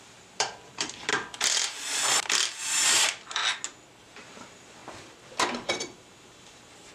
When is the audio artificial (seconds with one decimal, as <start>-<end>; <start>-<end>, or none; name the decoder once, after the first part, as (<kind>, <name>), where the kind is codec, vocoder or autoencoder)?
0.0-1.1 (vocoder, BigVGAN v2); 2.6-3.4; 4.0-4.8; 5.7-6.9

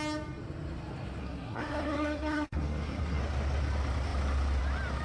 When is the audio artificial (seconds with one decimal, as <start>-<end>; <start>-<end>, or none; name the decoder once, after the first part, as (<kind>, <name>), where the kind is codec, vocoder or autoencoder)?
1.2-3.2 (codec, SNAC)

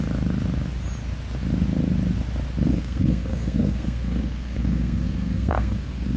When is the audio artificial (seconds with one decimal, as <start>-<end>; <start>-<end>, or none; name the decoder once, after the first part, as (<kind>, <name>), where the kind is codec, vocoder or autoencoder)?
2.7-6.2 (codec, SNAC)

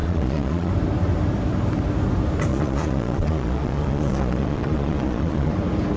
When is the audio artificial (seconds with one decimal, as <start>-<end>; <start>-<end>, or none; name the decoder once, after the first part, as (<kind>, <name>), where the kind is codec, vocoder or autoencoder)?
0.0-0.7 (vocoder, Vocos); 2.5-5.5

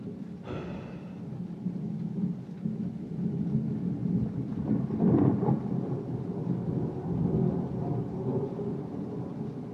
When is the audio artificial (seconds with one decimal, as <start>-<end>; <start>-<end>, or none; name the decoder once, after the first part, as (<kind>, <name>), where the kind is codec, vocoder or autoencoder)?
none